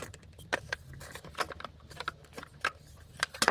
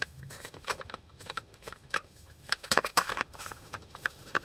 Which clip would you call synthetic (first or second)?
second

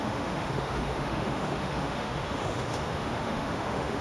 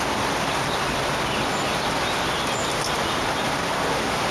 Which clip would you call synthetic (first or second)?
first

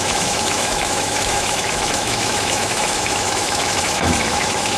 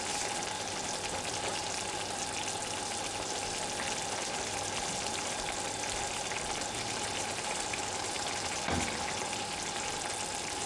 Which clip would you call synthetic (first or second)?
first